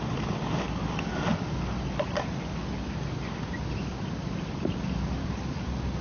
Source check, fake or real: real